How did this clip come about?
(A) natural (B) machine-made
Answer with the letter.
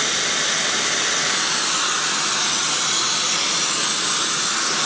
A